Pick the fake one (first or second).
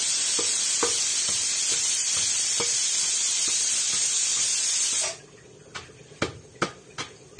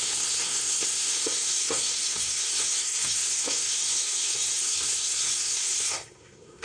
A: second